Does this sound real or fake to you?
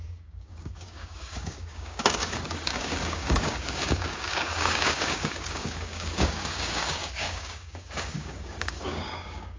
fake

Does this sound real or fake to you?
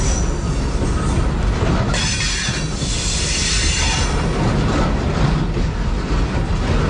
real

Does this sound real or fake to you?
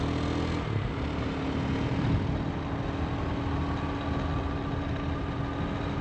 real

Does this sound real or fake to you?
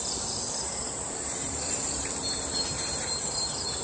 fake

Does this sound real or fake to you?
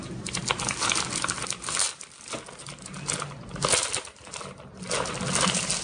real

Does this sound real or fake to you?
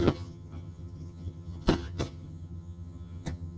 fake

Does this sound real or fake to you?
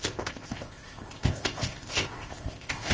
fake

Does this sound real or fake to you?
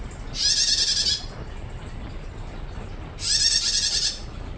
real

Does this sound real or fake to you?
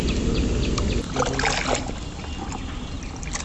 real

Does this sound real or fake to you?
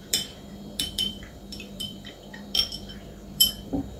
fake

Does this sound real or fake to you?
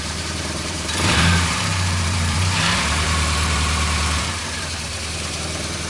fake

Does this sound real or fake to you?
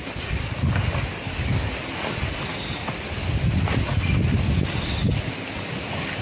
real